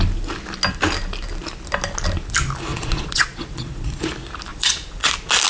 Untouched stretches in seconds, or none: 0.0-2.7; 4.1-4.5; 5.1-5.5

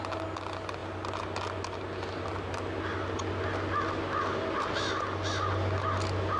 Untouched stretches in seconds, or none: 0.0-6.4

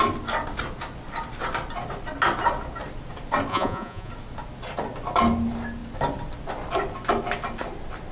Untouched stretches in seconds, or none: 0.0-3.5; 4.1-8.1

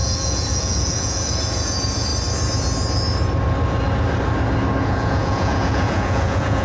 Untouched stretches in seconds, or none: 2.1-4.8

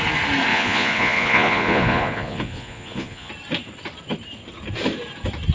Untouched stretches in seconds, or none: 0.0-0.5; 3.3-5.5